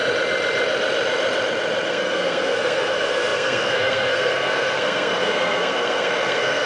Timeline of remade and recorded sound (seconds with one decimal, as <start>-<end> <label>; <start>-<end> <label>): 0.0-1.9 recorded; 1.9-6.7 remade